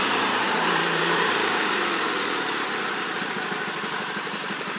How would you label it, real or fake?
fake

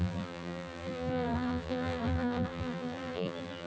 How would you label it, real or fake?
fake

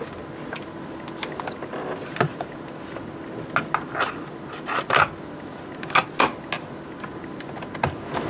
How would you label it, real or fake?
real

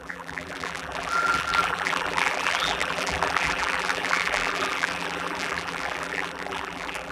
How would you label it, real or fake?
fake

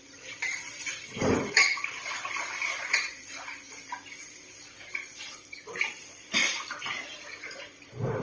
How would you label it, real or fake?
fake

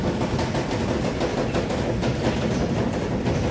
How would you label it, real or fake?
real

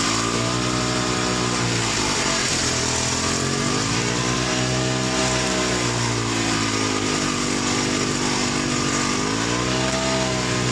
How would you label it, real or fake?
real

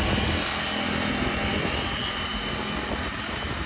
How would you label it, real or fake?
real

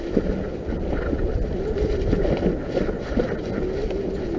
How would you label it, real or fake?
fake